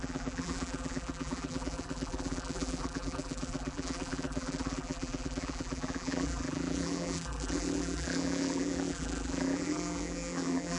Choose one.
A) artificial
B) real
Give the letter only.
A